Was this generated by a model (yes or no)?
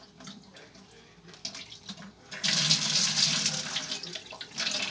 no